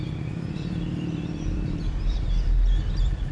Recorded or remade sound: remade